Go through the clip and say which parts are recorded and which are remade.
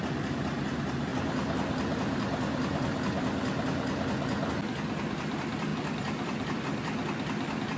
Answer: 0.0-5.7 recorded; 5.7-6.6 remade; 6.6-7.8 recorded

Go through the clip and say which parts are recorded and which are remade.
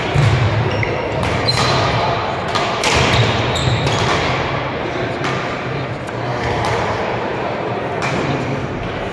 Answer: 0.0-3.6 remade; 3.6-5.4 recorded; 5.4-9.1 remade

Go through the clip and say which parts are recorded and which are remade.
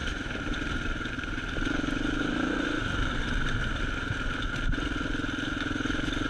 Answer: 0.0-6.3 recorded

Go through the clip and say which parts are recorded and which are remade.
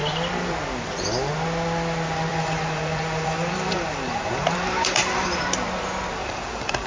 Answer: 0.0-2.3 recorded; 2.3-5.4 remade; 5.4-6.2 recorded; 6.2-6.9 remade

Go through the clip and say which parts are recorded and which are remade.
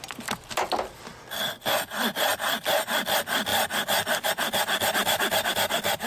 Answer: 0.0-1.1 recorded; 1.1-1.7 remade; 1.7-2.3 recorded; 2.3-3.0 remade; 3.0-3.5 recorded; 3.5-4.3 remade; 4.3-6.1 recorded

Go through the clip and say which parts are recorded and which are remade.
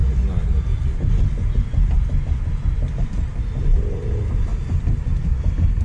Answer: 0.0-2.9 recorded; 2.9-4.5 remade; 4.5-5.8 recorded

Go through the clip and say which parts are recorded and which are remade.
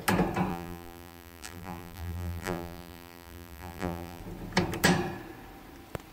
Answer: 0.0-0.5 recorded; 0.5-4.2 remade; 4.2-6.1 recorded